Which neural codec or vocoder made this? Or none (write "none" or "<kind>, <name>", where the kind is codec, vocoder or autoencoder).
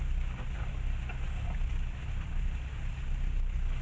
none